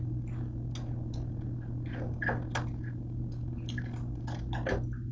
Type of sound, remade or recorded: recorded